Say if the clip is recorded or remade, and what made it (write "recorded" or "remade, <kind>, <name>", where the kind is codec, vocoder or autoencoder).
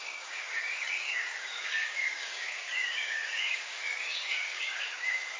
remade, codec, DAC